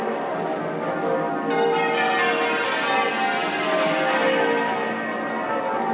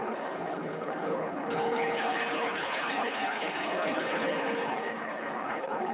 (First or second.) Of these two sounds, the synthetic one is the second